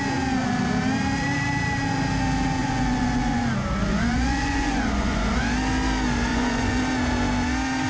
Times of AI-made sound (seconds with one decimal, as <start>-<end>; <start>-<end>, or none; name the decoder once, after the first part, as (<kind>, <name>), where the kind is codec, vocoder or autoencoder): 2.6-3.4 (vocoder, Vocos); 3.9-5.3; 6.3-6.8